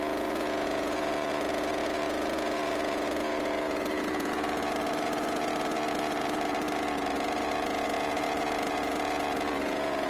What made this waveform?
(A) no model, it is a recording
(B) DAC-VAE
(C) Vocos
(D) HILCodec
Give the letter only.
C